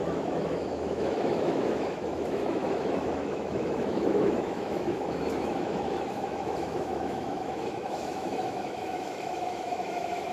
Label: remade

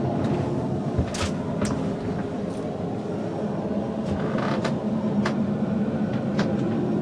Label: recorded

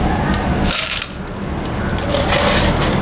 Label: recorded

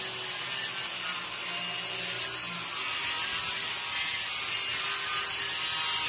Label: recorded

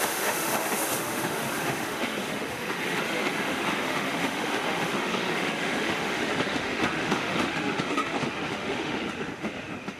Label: remade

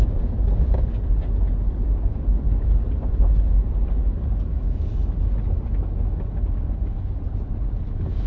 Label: recorded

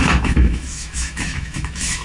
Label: remade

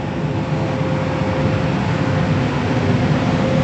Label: recorded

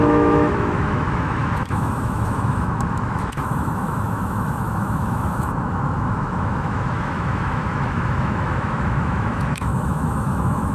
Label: remade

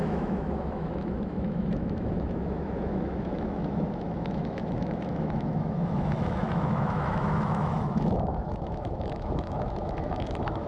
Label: remade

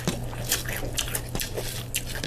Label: recorded